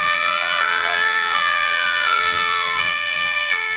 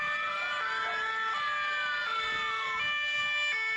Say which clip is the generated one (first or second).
first